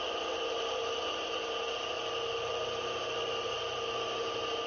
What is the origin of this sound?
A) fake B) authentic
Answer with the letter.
B